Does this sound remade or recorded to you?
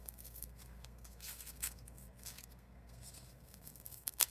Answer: remade